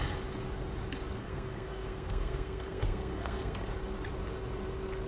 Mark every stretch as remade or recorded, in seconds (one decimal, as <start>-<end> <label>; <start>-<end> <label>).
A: 0.0-1.2 recorded; 1.2-3.7 remade; 3.7-5.1 recorded